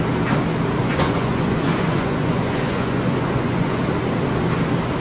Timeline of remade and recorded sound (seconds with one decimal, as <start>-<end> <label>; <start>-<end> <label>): 0.0-0.8 recorded; 0.8-3.8 remade; 3.8-5.0 recorded